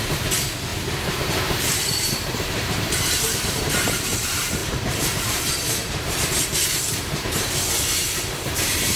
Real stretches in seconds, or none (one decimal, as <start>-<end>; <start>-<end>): none